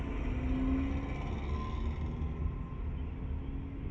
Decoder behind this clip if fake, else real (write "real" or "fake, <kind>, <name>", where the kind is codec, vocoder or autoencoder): real